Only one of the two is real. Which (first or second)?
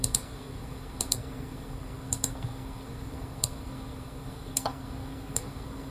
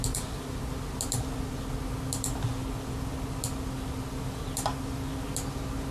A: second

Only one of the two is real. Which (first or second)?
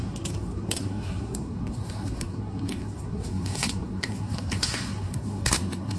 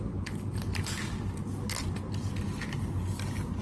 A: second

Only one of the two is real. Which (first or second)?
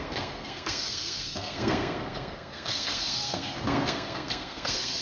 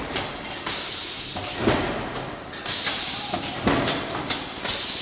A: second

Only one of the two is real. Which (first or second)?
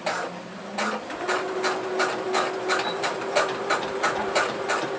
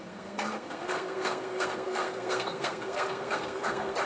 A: first